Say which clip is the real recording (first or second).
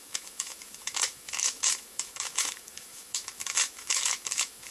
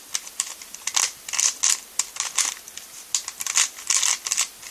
second